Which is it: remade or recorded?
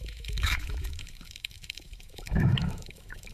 remade